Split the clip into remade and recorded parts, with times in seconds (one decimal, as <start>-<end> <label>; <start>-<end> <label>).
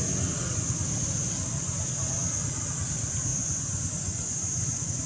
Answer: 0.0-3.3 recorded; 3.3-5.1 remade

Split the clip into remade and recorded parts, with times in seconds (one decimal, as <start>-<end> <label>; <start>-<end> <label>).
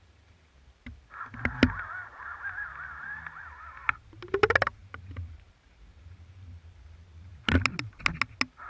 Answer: 0.0-4.8 recorded; 4.8-6.7 remade; 6.7-8.7 recorded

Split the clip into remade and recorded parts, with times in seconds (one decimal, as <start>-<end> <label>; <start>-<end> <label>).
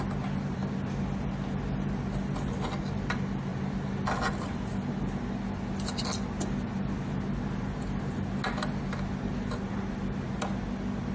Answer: 0.0-11.1 recorded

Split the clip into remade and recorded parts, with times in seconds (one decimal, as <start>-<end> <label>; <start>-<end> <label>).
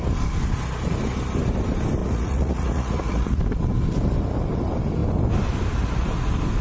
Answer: 0.0-2.0 recorded; 2.0-3.4 remade; 3.4-6.6 recorded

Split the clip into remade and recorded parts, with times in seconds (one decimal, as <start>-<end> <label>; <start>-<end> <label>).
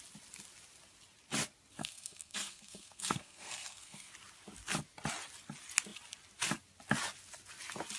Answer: 0.0-1.8 recorded; 1.8-4.1 remade; 4.1-8.0 recorded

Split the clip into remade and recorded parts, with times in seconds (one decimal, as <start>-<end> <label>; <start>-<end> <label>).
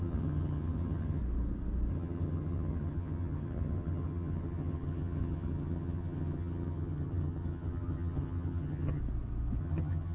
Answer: 0.0-1.2 remade; 1.2-1.9 recorded; 1.9-9.0 remade; 9.0-9.6 recorded; 9.6-10.1 remade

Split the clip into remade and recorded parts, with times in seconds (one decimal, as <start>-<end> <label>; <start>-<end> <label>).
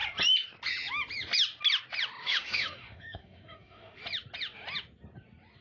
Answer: 0.0-2.2 recorded; 2.2-4.0 remade; 4.0-5.6 recorded